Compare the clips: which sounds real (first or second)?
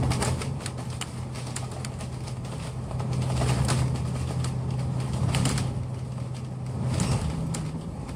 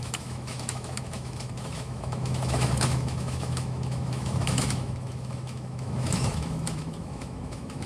first